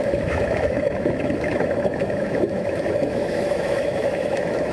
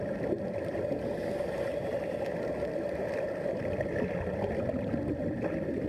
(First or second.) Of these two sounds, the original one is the second